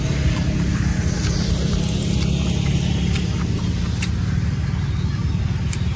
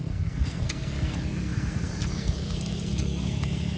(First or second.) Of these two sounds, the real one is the first